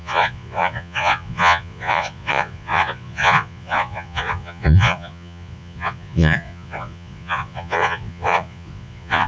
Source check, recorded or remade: remade